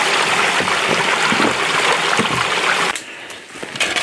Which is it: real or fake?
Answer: real